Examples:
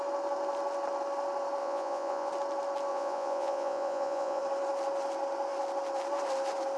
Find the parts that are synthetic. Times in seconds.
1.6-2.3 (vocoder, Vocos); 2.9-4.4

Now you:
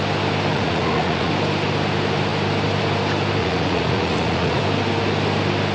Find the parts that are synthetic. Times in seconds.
0.5-1.3 (vocoder, Vocos); 3.4-4.6

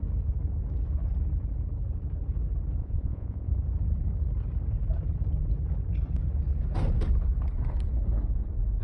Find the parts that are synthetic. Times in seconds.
2.8-3.5 (vocoder, Vocos)

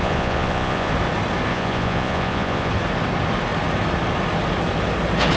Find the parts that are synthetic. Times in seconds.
0.0-0.9 (vocoder, Vocos); 1.5-2.7